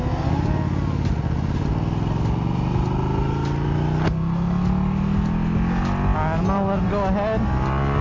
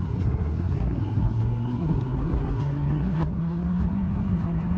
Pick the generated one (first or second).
second